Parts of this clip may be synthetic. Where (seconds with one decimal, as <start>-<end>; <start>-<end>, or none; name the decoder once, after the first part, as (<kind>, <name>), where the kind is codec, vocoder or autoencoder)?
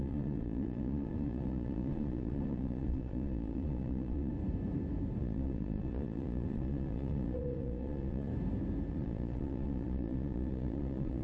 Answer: 0.0-4.3 (vocoder, Vocos); 5.2-8.3; 8.9-11.2